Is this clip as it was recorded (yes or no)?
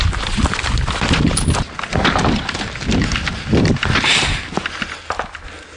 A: yes